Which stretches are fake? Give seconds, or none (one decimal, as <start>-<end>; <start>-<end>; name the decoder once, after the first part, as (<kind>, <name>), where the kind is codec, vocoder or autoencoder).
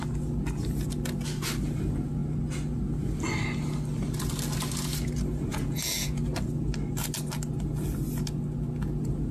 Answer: 5.5-6.2 (vocoder, Vocos)